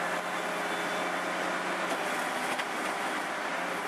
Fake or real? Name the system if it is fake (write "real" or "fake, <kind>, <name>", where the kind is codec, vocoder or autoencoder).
real